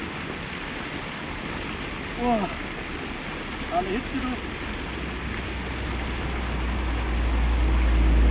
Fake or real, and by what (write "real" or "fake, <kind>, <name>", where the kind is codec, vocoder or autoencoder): real